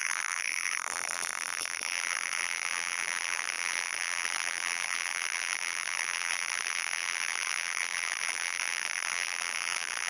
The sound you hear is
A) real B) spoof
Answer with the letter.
B